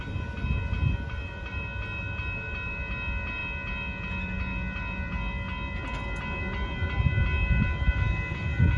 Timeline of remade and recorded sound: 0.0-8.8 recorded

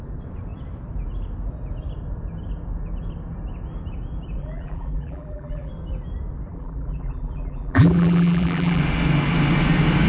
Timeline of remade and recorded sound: 0.0-4.4 recorded; 4.4-5.7 remade; 5.7-6.5 recorded; 6.5-8.8 remade; 8.8-10.1 recorded